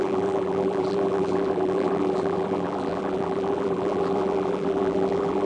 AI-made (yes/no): yes